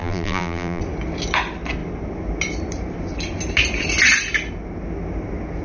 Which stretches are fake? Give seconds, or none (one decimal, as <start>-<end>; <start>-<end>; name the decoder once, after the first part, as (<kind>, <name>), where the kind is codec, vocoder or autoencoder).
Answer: 0.0-0.8 (vocoder, BigVGAN v2)